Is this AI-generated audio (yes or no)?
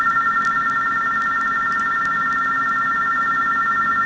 no